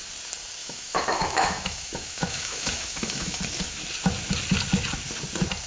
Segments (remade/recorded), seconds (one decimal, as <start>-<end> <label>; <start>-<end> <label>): 0.0-0.6 recorded; 0.6-3.4 remade; 3.4-5.7 recorded